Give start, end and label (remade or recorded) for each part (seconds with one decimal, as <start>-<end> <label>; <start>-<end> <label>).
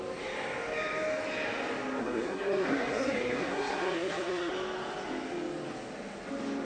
0.0-2.0 recorded; 2.0-4.5 remade; 4.5-6.6 recorded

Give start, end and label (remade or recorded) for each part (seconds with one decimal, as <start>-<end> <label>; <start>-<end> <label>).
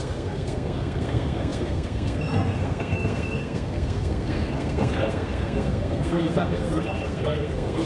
0.0-7.9 remade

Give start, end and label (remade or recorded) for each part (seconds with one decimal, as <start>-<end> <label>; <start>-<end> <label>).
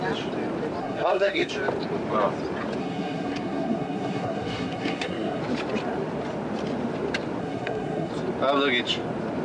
0.0-0.8 recorded; 0.8-1.5 remade; 1.5-2.8 recorded; 2.8-5.4 remade; 5.4-7.4 recorded; 7.4-8.1 remade; 8.1-9.4 recorded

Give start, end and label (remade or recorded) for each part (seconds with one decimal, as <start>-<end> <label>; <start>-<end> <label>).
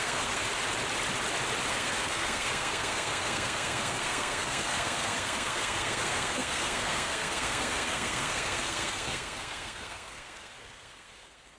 0.0-0.4 remade; 0.4-1.7 recorded; 1.7-11.6 remade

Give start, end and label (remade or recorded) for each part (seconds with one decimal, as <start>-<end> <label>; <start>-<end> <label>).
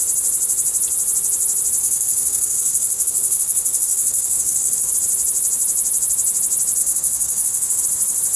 0.0-1.8 recorded; 1.8-4.9 remade; 4.9-6.8 recorded; 6.8-7.8 remade; 7.8-8.4 recorded